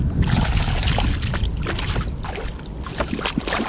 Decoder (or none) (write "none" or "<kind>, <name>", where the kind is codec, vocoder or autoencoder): none